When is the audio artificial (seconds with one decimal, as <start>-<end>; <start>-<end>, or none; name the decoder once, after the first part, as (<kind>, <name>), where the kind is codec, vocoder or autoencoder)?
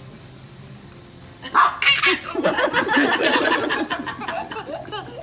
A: 3.2-3.8 (vocoder, Vocos)